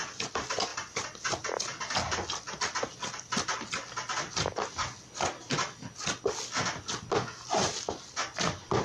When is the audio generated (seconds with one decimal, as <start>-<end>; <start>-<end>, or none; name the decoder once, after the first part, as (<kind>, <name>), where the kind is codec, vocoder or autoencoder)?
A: none